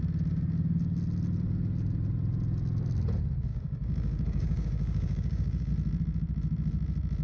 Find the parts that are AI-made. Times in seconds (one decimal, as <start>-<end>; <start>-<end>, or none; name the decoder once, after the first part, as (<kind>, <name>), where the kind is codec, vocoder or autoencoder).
3.5-5.7 (codec, DAC)